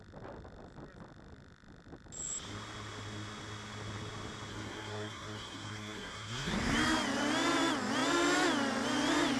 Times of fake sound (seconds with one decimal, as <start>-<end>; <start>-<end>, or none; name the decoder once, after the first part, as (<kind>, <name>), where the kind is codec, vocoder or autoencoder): 4.5-6.5 (codec, SNAC)